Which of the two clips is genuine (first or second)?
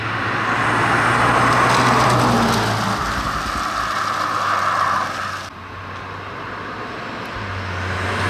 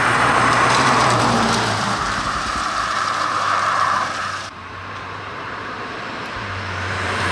first